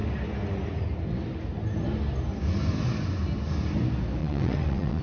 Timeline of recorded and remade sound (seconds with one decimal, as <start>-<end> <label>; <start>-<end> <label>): 0.0-4.2 recorded; 4.2-5.0 remade